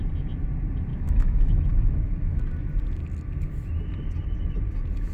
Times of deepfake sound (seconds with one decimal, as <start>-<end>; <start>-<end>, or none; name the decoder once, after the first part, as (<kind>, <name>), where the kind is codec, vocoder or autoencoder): 0.9-2.4 (autoencoder, DAC-VAE)